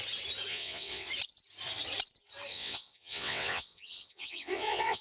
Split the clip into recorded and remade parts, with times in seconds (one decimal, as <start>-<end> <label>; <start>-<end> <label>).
0.0-0.5 recorded; 0.5-1.1 remade; 1.1-2.5 recorded; 2.5-5.0 remade